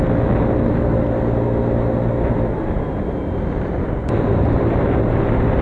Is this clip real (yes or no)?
yes